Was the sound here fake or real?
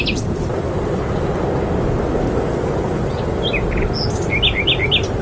real